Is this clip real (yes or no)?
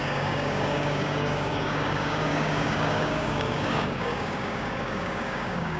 no